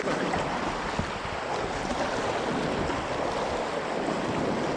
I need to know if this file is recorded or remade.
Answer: recorded